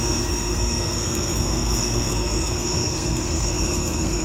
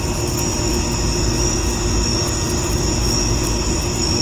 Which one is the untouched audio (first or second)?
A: second